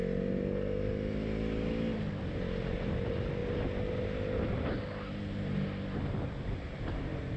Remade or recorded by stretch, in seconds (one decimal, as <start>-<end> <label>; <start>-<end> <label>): 0.0-7.4 recorded